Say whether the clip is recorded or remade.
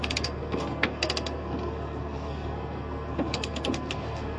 remade